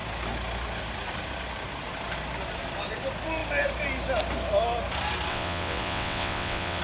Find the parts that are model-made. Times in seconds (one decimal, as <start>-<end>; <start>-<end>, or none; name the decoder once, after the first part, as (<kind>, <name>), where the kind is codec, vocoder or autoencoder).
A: 5.3-6.8 (vocoder, WaveNeXt)

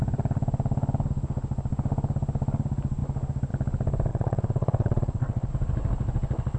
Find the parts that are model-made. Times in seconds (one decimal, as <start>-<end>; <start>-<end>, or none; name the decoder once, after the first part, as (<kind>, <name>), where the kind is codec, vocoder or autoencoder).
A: 4.1-5.5 (vocoder, WaveNeXt)

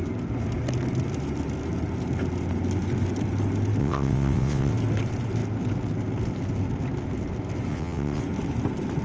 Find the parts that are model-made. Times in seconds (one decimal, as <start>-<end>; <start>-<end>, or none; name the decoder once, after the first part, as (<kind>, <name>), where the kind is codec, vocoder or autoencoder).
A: 3.8-4.7 (vocoder, WaveNeXt); 7.7-8.2